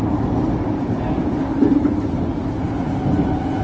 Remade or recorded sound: recorded